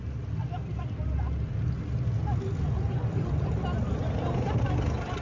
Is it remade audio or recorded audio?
recorded